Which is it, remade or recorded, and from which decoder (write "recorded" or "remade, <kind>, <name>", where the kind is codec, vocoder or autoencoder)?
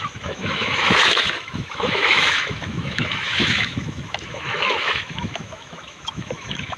remade, autoencoder, DAC-VAE